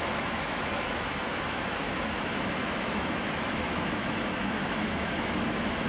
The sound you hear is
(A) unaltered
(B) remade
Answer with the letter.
B